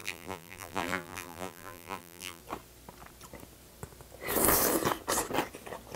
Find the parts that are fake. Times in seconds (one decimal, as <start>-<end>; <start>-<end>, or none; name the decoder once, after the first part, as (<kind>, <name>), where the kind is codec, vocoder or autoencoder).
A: 0.0-2.4 (vocoder, BigVGAN v2)